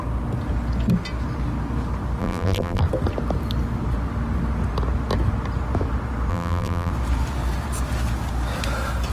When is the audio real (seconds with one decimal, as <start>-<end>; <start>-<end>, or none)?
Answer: 0.0-2.2; 2.8-6.3; 6.9-9.1